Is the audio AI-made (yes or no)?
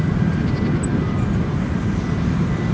no